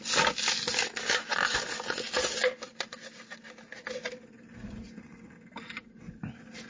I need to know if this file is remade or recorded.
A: recorded